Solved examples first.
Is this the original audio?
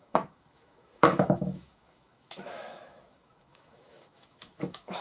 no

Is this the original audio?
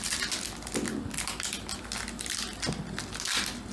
yes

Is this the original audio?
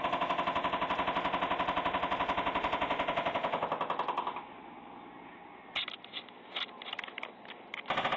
yes